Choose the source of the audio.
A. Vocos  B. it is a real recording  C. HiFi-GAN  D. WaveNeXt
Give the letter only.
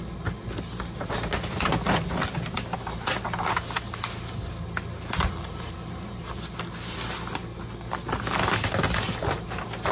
B